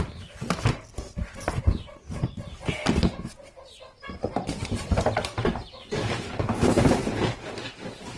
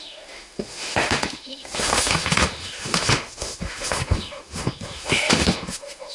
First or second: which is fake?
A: second